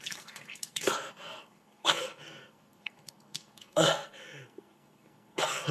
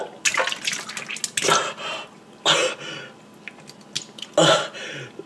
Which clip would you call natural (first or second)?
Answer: second